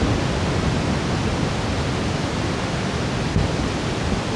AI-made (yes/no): no